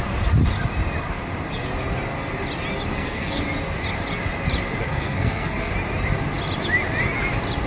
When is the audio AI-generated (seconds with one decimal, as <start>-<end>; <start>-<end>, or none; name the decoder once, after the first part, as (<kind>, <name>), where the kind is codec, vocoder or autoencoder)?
2.9-3.4 (codec, SNAC); 4.9-5.7